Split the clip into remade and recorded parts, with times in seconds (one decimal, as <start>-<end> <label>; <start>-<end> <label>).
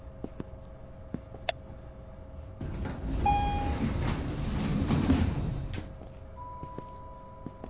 0.0-4.7 recorded; 4.7-5.6 remade; 5.6-7.7 recorded